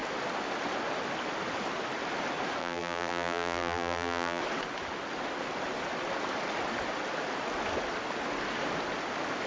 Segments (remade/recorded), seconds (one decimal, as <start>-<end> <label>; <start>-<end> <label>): 0.0-2.6 recorded; 2.6-4.4 remade; 4.4-9.5 recorded